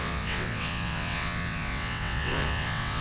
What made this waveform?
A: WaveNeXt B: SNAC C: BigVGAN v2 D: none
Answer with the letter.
A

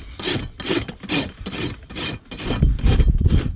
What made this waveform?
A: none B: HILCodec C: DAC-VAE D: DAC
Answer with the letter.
A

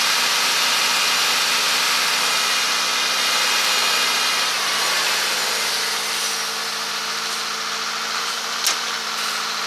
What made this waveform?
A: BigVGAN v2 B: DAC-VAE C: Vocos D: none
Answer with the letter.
D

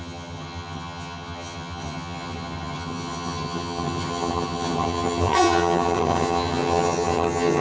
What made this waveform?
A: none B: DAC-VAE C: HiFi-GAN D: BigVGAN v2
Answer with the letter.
C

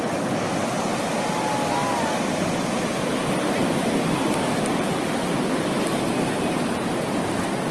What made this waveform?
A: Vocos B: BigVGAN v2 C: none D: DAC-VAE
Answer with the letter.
C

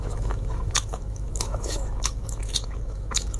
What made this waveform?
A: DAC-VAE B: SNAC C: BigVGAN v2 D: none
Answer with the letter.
A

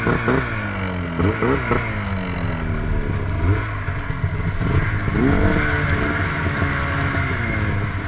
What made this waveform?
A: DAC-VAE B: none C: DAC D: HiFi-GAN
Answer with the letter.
B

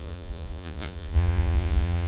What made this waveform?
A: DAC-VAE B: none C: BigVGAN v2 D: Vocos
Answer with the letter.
D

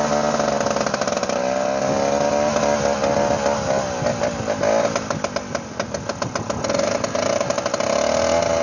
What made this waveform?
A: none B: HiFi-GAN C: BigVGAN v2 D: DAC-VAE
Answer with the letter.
A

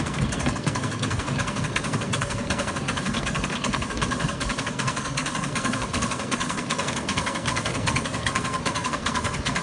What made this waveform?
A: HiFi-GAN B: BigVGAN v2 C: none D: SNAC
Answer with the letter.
D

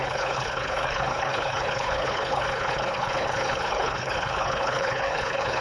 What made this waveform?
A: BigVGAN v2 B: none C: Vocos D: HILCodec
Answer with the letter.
D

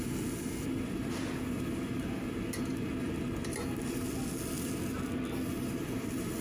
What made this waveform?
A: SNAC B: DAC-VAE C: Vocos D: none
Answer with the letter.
D